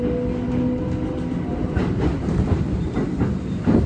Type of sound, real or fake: real